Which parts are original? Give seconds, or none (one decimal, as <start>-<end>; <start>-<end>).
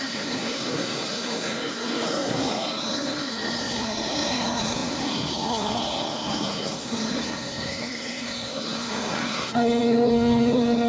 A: none